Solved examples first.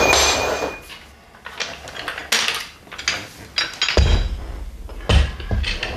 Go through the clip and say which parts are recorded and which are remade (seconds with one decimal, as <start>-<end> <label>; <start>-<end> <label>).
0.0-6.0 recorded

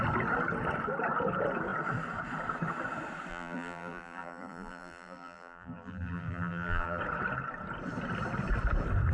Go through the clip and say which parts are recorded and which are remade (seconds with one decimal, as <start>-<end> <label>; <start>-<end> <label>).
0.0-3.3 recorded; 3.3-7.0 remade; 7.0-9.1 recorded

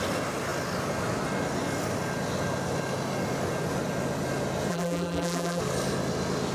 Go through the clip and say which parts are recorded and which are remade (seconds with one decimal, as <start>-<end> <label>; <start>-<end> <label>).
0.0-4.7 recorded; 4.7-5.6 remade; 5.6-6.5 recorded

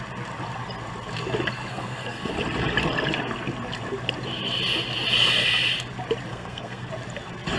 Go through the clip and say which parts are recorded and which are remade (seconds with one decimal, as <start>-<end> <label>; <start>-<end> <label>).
0.0-1.7 recorded; 1.7-2.3 remade; 2.3-6.3 recorded; 6.3-6.9 remade; 6.9-7.6 recorded

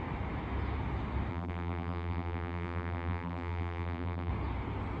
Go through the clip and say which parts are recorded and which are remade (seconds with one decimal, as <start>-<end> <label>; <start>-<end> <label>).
0.0-1.3 recorded; 1.3-4.3 remade; 4.3-5.0 recorded

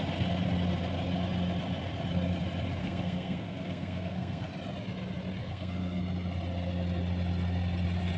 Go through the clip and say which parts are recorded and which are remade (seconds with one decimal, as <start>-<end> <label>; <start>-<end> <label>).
0.0-2.8 recorded; 2.8-4.5 remade; 4.5-5.4 recorded; 5.4-6.0 remade; 6.0-8.2 recorded

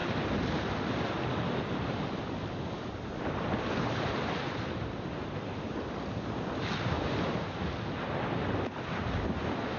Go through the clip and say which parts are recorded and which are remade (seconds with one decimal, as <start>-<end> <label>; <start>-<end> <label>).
0.0-2.9 remade; 2.9-9.8 recorded